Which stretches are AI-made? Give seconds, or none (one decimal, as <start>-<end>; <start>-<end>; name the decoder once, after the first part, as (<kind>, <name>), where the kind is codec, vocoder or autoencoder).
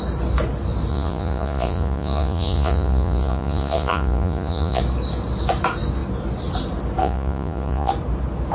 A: 0.9-4.8 (vocoder, Vocos); 7.0-7.9